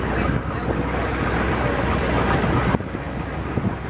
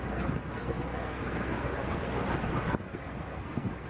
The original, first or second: first